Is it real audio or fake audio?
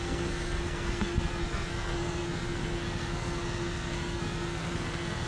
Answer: fake